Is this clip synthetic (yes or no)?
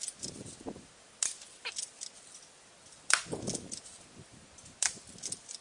no